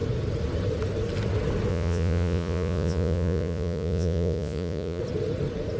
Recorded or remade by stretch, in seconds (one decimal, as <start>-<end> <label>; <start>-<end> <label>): 0.0-1.7 recorded; 1.7-5.0 remade; 5.0-5.8 recorded